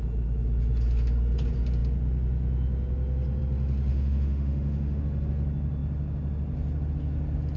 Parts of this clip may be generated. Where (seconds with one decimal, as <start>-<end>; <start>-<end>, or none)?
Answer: 3.9-5.0